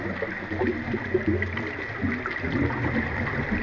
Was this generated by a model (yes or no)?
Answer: no